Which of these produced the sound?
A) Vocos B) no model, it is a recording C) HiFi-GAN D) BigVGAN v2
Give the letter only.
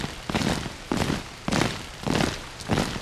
B